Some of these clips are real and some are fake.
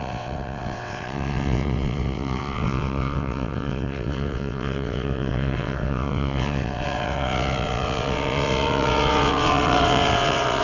fake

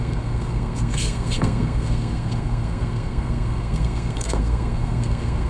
fake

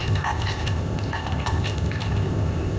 fake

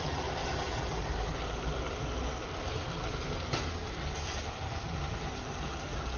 real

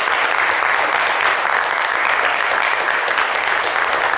real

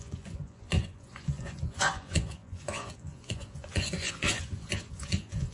fake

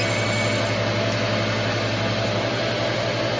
real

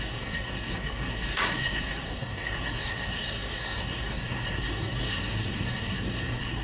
fake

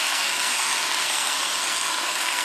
fake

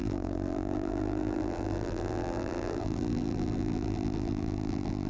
fake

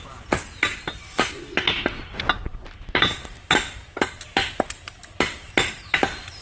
real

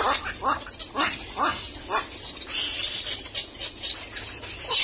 real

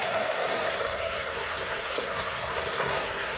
fake